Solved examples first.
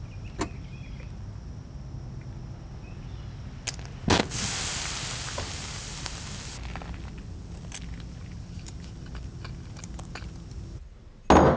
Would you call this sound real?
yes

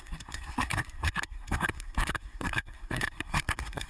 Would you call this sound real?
no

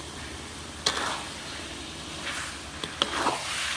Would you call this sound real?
yes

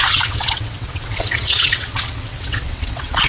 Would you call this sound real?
no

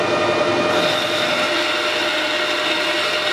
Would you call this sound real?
yes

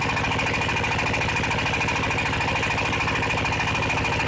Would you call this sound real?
yes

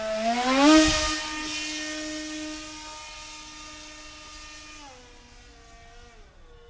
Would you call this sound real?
yes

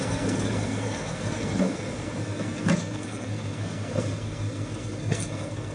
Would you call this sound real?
no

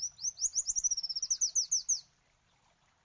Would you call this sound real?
yes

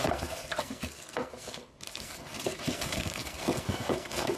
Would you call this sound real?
no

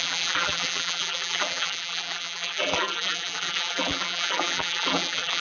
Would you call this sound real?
no